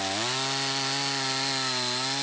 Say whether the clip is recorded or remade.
recorded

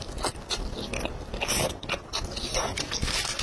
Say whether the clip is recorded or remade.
recorded